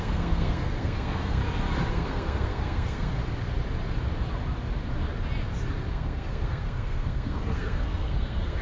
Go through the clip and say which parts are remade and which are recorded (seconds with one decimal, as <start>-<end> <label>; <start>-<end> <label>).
0.0-1.4 remade; 1.4-1.9 recorded; 1.9-3.2 remade; 3.2-5.9 recorded; 5.9-8.6 remade